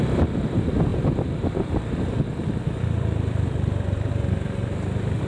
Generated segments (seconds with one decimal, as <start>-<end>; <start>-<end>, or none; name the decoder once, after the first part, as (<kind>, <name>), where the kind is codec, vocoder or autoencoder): 0.9-4.1 (vocoder, BigVGAN v2)